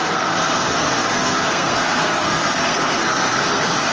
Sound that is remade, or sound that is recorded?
remade